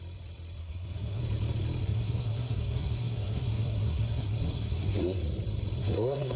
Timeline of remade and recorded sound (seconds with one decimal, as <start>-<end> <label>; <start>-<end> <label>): 0.0-0.6 recorded; 0.6-1.2 remade; 1.2-1.8 recorded; 1.8-5.2 remade; 5.2-5.8 recorded; 5.8-6.4 remade